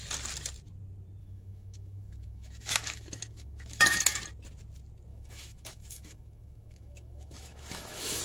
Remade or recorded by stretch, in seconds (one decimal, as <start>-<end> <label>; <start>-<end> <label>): 0.0-1.2 recorded; 1.2-4.2 remade; 4.2-5.1 recorded; 5.1-8.2 remade